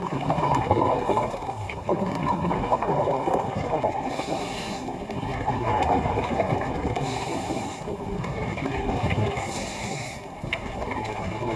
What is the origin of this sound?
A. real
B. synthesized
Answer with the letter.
B